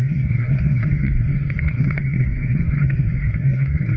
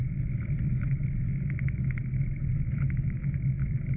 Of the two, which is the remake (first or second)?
first